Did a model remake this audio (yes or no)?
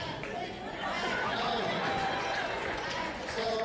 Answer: yes